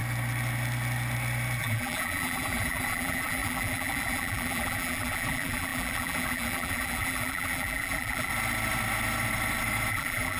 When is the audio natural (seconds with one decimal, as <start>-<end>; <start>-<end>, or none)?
0.0-1.6; 8.3-9.9